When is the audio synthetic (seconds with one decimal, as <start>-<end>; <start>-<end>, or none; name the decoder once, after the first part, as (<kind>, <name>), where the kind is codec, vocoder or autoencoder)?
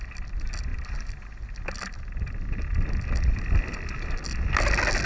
none